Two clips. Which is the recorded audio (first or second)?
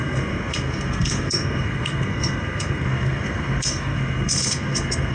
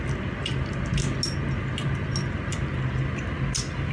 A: second